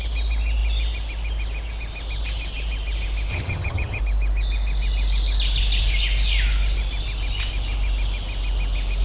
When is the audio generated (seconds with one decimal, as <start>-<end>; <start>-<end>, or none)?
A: 3.3-4.0

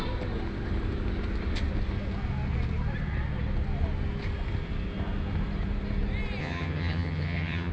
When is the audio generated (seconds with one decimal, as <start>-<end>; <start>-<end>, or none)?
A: 6.4-7.7

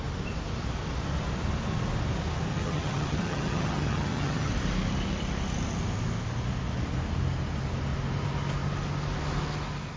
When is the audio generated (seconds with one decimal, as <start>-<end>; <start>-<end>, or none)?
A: 2.5-4.5

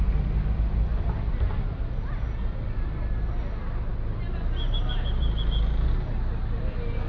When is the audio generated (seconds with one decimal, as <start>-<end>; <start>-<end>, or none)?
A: none

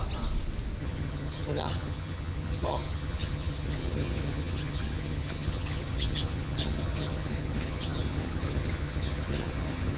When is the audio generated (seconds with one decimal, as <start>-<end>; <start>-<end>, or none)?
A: 0.8-10.0